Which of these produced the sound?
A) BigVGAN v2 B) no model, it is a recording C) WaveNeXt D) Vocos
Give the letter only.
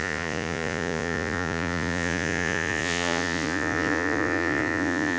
D